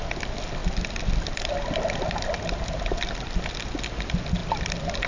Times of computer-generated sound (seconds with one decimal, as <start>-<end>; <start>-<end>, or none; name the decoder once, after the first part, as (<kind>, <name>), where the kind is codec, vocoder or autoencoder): 0.6-2.8 (vocoder, BigVGAN v2)